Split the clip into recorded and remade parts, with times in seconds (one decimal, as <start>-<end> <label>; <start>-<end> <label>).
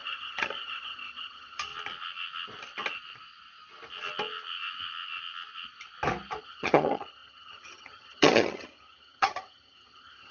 0.0-1.7 remade; 1.7-6.4 recorded; 6.4-10.3 remade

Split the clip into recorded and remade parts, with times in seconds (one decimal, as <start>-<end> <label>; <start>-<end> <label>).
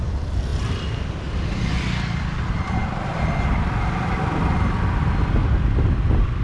0.0-6.4 recorded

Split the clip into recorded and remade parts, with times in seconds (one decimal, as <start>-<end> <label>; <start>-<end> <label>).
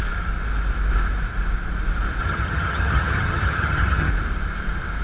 0.0-2.2 recorded; 2.2-4.1 remade; 4.1-5.0 recorded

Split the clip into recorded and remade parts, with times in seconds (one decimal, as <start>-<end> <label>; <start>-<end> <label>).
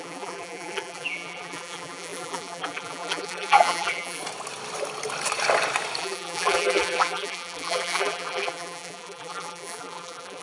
0.0-4.2 remade; 4.2-6.0 recorded; 6.0-10.4 remade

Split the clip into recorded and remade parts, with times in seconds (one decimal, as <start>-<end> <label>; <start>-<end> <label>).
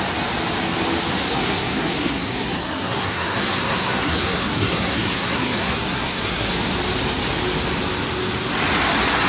0.0-1.3 recorded; 1.3-6.5 remade; 6.5-9.3 recorded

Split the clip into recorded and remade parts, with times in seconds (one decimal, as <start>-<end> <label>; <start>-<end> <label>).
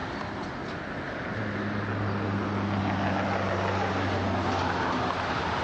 0.0-5.6 recorded